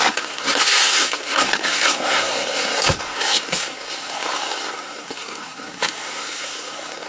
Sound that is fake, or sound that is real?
fake